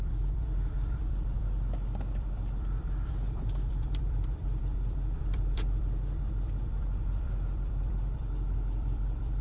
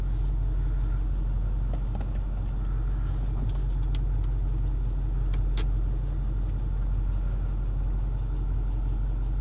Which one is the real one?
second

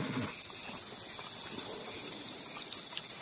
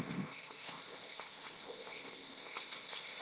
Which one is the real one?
first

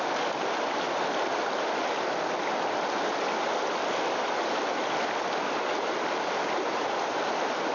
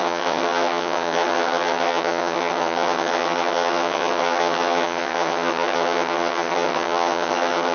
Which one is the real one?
first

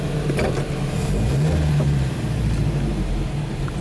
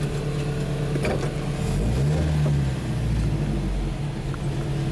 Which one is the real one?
second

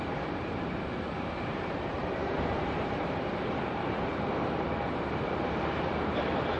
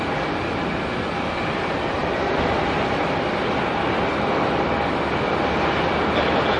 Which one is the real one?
second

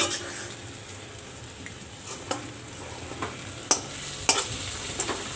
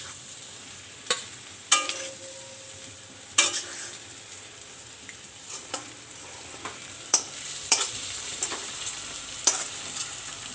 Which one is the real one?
first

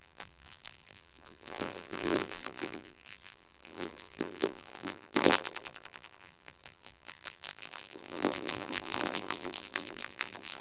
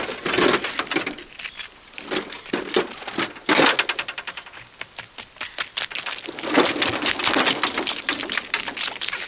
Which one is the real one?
second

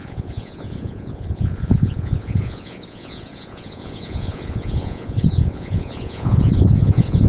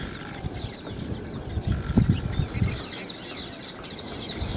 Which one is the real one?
second